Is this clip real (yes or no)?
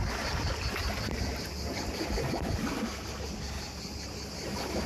yes